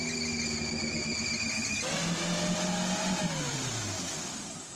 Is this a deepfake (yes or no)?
no